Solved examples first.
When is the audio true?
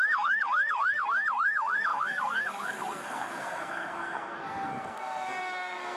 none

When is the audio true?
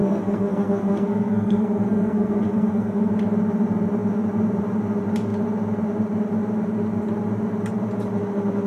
3.1-8.7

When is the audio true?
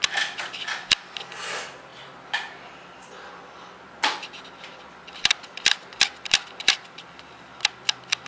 0.0-8.3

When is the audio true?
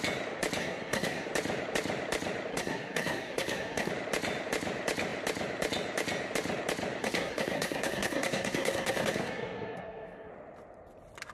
0.0-0.6; 1.3-2.5; 3.9-7.0; 10.3-11.3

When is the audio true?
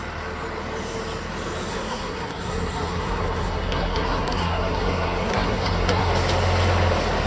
0.0-1.7; 6.1-7.3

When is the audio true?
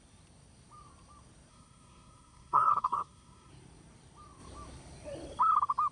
0.0-1.5; 3.5-5.9